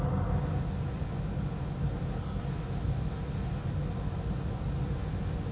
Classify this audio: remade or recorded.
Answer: recorded